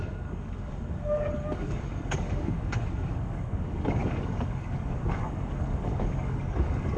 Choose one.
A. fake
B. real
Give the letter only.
A